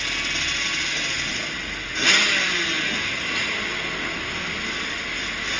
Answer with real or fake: real